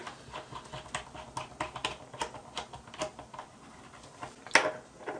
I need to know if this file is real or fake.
real